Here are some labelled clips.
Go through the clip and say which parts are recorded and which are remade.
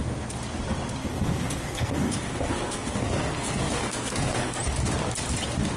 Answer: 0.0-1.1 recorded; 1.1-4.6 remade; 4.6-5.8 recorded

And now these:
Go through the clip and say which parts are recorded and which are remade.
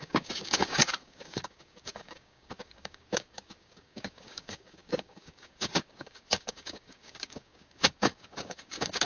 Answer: 0.0-9.0 remade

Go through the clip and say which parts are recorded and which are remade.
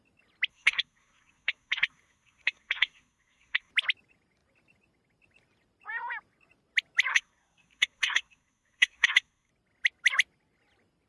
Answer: 0.0-0.5 recorded; 0.5-3.7 remade; 3.7-7.1 recorded; 7.1-9.5 remade; 9.5-11.1 recorded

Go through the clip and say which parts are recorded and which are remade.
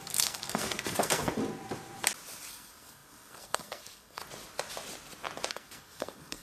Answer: 0.0-1.4 remade; 1.4-2.5 recorded; 2.5-4.2 remade; 4.2-5.5 recorded; 5.5-6.4 remade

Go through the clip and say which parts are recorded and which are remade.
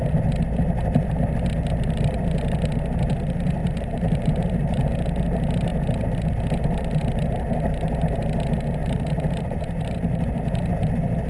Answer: 0.0-3.6 recorded; 3.6-4.9 remade; 4.9-8.8 recorded; 8.8-10.2 remade; 10.2-11.3 recorded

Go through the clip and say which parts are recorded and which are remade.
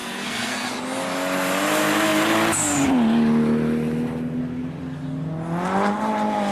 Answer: 0.0-0.7 remade; 0.7-6.5 recorded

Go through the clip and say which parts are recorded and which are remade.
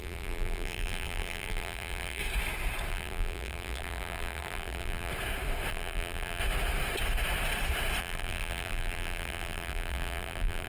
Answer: 0.0-2.2 remade; 2.2-2.9 recorded; 2.9-5.1 remade; 5.1-5.7 recorded; 5.7-6.4 remade; 6.4-8.0 recorded; 8.0-10.7 remade